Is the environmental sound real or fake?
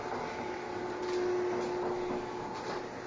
real